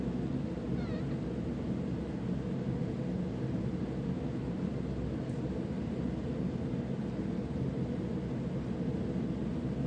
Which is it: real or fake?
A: real